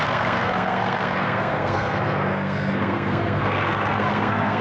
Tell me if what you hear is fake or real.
fake